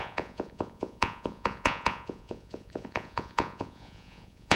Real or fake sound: fake